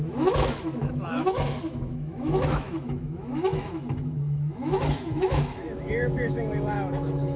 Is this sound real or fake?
fake